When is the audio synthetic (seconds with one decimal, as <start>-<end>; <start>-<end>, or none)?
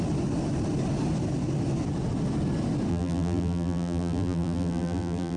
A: 2.9-5.4